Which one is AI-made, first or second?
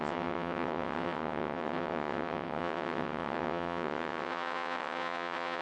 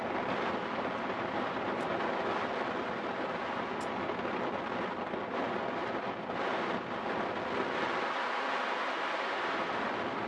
first